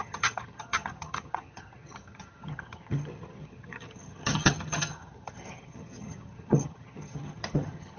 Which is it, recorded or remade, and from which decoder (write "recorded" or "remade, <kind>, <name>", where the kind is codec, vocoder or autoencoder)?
remade, vocoder, HiFi-GAN